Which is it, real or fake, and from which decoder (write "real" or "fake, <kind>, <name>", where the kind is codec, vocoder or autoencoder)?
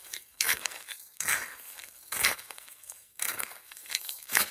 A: fake, codec, SNAC